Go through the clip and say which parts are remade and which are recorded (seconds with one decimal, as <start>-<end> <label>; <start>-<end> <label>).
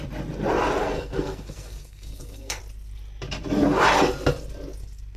0.0-0.8 recorded; 0.8-2.6 remade; 2.6-5.2 recorded